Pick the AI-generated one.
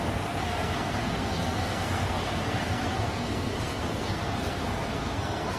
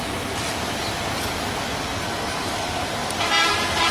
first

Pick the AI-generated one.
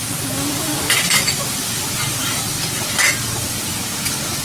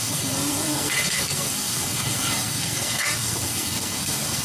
second